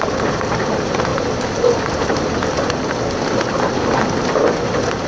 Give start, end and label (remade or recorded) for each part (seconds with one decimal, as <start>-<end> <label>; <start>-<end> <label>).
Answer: 0.0-2.4 remade; 2.4-5.1 recorded